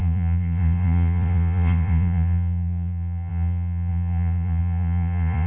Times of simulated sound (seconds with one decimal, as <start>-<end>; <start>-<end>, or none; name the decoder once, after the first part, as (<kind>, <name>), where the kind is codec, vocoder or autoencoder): 0.0-5.5 (vocoder, Vocos)